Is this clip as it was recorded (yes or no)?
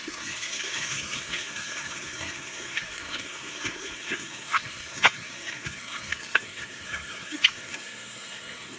no